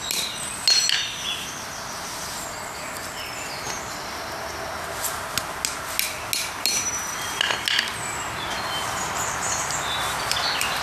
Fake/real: real